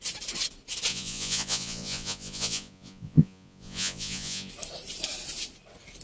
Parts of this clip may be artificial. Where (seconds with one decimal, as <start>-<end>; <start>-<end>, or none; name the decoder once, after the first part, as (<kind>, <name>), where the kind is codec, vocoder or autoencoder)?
0.9-4.5 (vocoder, Vocos)